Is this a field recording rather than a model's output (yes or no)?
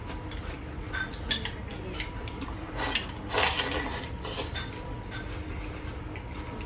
yes